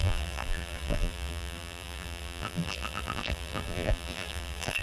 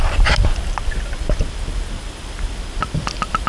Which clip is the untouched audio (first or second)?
second